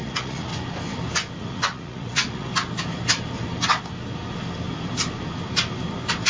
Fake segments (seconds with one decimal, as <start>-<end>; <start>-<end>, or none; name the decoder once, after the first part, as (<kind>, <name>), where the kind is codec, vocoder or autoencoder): 0.0-0.5 (vocoder, Vocos); 1.4-2.5